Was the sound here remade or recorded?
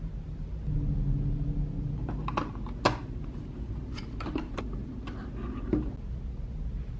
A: recorded